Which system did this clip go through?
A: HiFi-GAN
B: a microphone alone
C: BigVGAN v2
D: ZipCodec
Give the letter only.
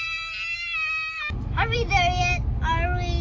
B